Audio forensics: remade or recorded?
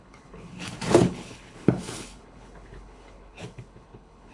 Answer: remade